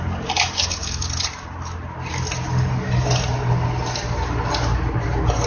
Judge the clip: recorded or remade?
recorded